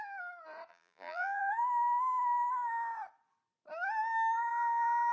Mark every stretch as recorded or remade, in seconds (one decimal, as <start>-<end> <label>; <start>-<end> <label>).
0.0-0.7 recorded; 0.7-1.5 remade; 1.5-4.5 recorded; 4.5-5.1 remade